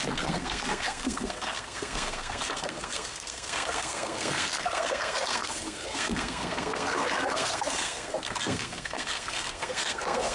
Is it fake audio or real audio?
fake